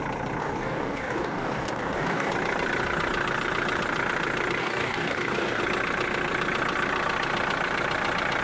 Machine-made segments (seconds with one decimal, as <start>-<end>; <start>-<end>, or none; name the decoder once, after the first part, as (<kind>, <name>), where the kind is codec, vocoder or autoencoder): 0.4-2.3 (codec, DAC); 4.6-5.6